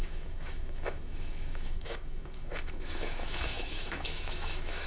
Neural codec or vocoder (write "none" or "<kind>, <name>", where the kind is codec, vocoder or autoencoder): autoencoder, DAC-VAE